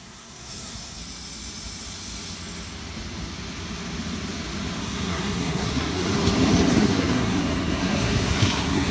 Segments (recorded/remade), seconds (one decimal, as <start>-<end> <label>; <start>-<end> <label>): 0.0-1.0 remade; 1.0-4.8 recorded; 4.8-6.1 remade; 6.1-6.7 recorded; 6.7-8.9 remade